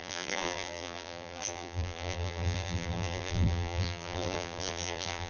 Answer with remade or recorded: remade